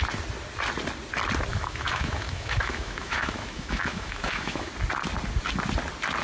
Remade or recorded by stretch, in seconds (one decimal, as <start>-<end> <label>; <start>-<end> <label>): 0.0-1.5 recorded; 1.5-4.7 remade; 4.7-6.2 recorded